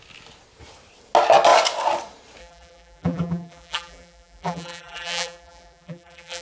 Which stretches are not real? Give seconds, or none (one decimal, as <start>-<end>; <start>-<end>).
2.4-6.4